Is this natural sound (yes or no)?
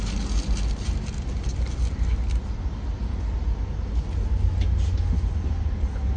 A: yes